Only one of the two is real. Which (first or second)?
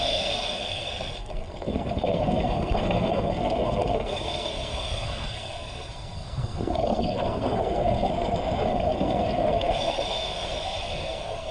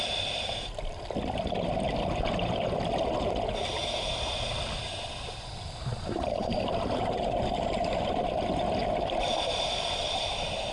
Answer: second